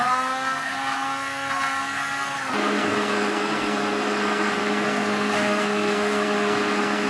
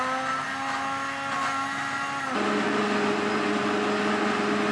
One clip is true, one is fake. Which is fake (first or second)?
first